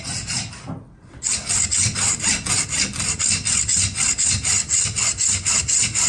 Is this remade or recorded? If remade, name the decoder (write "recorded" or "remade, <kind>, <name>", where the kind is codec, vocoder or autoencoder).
recorded